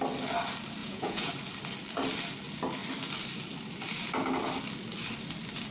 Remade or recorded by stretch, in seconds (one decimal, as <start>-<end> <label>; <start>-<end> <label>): 0.0-0.8 recorded; 0.8-1.3 remade; 1.3-5.7 recorded

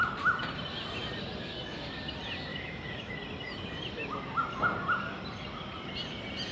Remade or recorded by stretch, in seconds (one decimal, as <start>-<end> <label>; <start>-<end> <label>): 0.0-2.5 recorded; 2.5-3.1 remade; 3.1-6.5 recorded

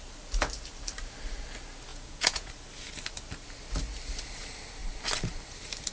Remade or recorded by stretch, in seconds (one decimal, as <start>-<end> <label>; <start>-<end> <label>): 0.0-1.9 recorded; 1.9-2.5 remade; 2.5-5.9 recorded

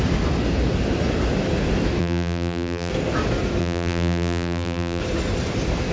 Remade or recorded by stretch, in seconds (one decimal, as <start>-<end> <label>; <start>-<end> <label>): 0.0-2.0 recorded; 2.0-2.9 remade; 2.9-3.6 recorded; 3.6-5.0 remade; 5.0-5.9 recorded

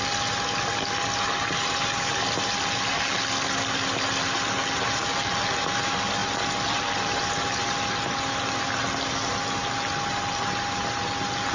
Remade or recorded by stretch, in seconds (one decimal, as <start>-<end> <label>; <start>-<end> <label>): 0.0-11.5 recorded